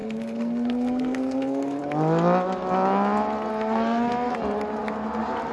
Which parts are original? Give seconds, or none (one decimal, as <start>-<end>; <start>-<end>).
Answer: 1.8-3.5; 4.3-5.5